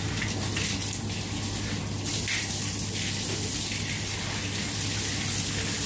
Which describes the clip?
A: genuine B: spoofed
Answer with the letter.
A